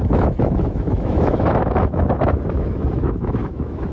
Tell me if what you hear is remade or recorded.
remade